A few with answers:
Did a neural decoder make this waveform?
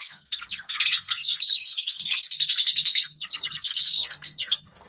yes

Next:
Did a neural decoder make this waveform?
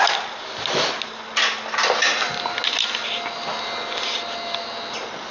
no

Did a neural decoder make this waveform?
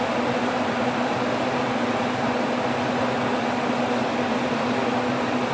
no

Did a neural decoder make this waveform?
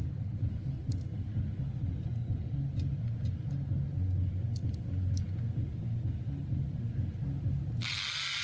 no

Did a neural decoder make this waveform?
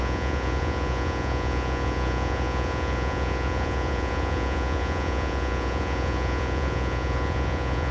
yes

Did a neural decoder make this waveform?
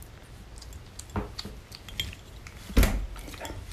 no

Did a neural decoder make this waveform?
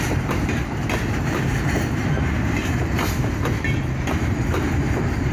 yes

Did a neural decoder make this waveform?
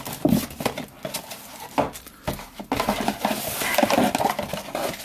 no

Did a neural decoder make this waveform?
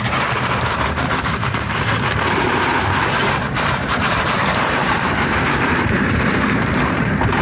yes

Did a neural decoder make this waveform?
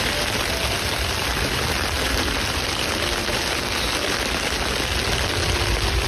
no